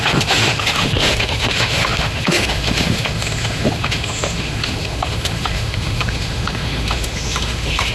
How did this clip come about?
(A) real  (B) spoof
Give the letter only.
B